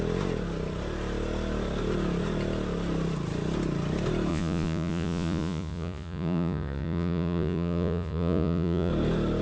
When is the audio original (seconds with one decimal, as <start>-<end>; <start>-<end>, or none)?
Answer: 0.0-4.3; 8.9-9.4